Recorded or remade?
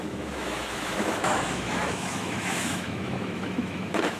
remade